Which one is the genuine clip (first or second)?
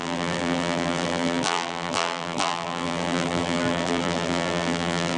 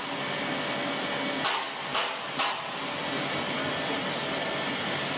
second